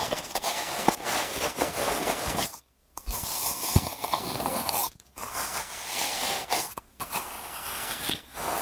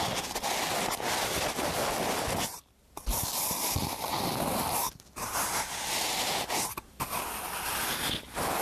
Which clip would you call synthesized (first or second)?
first